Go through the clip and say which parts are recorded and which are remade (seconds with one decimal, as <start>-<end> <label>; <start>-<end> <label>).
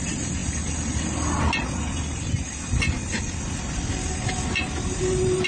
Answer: 0.0-5.5 recorded